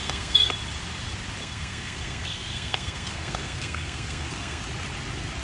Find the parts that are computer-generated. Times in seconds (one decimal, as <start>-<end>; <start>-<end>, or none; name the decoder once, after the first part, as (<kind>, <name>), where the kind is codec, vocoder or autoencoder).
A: 0.0-0.5 (codec, SNAC); 1.4-4.6